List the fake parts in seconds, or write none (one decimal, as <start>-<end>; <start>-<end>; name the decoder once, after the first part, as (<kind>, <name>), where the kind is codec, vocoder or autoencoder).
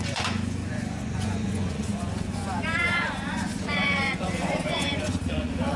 0.0-5.8 (vocoder, Vocos)